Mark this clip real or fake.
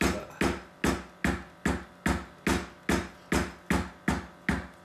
real